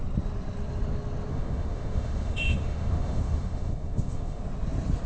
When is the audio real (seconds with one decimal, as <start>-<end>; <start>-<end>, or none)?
0.0-1.3; 4.4-5.1